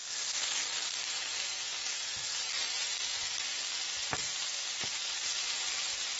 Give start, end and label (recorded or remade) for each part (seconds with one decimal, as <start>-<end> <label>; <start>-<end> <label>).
0.0-6.2 recorded